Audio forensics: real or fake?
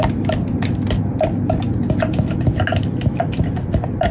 real